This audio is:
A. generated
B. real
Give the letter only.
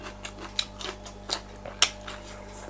B